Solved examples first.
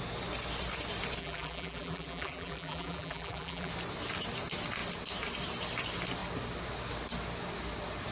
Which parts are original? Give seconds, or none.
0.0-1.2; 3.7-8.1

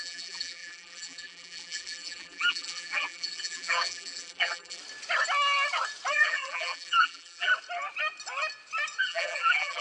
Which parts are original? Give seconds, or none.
4.8-6.1; 7.5-9.0

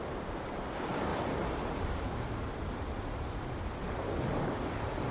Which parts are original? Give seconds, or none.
0.0-1.1; 2.3-5.1

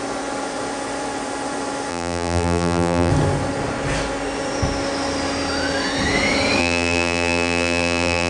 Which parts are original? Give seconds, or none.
0.0-1.9; 3.1-6.6

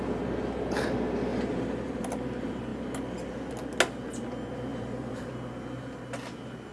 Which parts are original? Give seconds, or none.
0.0-1.3; 2.0-4.7; 5.3-6.7